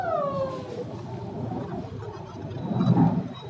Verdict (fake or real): real